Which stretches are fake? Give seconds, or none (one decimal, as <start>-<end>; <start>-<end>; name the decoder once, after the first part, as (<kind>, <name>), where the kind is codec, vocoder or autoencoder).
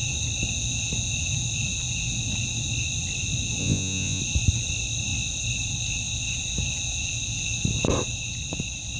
3.6-4.2 (vocoder, Vocos)